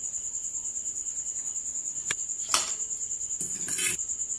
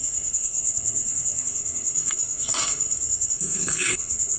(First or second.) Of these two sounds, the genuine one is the first